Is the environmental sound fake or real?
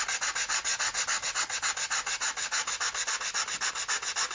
real